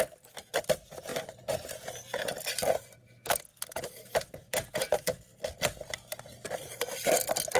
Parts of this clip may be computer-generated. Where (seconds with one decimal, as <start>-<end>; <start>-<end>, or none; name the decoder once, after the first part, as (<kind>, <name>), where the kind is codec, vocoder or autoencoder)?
3.5-4.7 (vocoder, BigVGAN v2)